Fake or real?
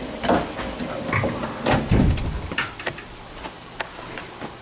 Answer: real